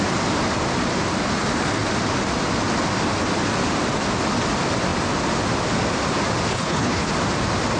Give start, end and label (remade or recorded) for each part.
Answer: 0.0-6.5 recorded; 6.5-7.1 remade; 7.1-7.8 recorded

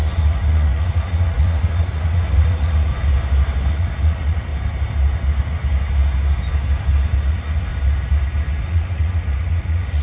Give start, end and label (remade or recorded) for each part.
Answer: 0.0-2.9 remade; 2.9-3.7 recorded; 3.7-4.5 remade; 4.5-7.3 recorded; 7.3-7.7 remade; 7.7-8.7 recorded; 8.7-10.0 remade

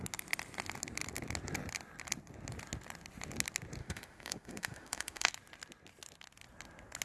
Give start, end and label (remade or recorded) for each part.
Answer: 0.0-3.8 recorded; 3.8-5.3 remade; 5.3-7.0 recorded

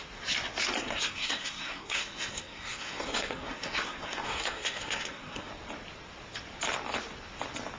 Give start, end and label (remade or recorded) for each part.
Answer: 0.0-0.8 recorded; 0.8-5.5 remade; 5.5-7.8 recorded

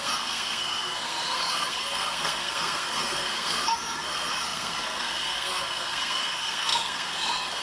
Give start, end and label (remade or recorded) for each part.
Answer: 0.0-7.6 remade

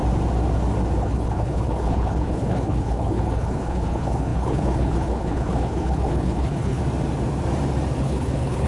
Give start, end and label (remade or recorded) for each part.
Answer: 0.0-1.0 recorded; 1.0-6.8 remade; 6.8-8.0 recorded; 8.0-8.7 remade